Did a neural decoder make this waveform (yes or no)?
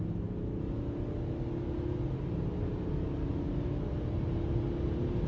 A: no